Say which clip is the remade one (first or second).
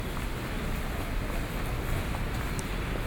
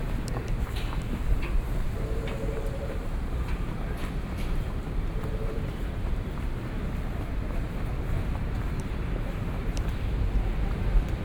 second